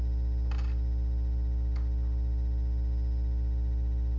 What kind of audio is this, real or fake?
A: real